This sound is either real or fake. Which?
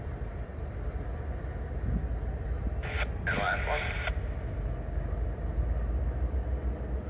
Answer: real